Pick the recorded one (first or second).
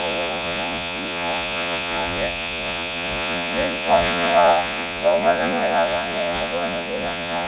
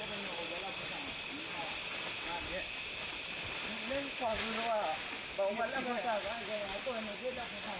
second